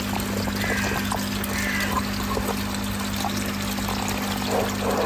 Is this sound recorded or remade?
recorded